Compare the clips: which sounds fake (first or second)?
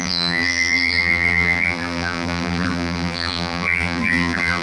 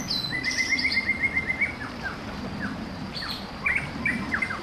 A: first